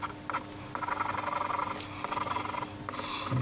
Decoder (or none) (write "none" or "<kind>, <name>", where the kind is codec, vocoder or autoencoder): none